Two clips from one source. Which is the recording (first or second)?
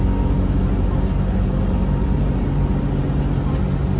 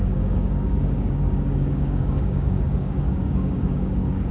first